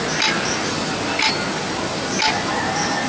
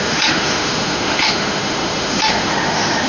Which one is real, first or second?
first